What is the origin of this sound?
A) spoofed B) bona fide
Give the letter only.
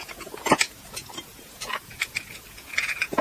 A